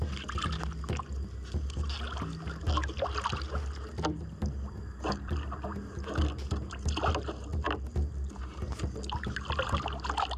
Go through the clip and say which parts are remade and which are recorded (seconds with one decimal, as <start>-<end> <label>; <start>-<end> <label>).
0.0-10.4 recorded